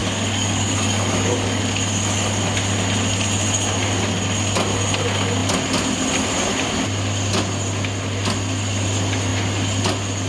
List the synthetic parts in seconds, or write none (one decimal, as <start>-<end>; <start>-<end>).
0.0-1.6